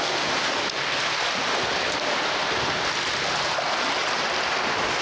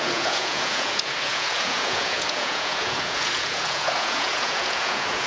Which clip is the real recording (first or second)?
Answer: first